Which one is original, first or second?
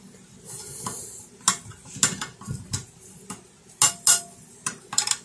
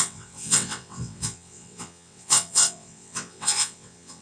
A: first